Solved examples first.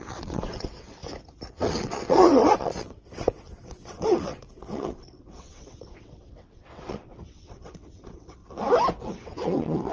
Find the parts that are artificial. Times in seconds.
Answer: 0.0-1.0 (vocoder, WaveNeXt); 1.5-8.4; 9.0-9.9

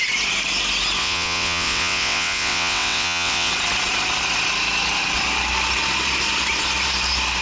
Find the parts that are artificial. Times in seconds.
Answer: 1.0-3.5 (vocoder, WaveNeXt)

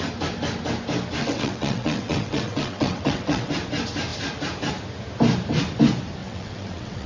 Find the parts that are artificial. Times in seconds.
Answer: 1.2-3.5 (vocoder, WaveNeXt); 6.2-7.1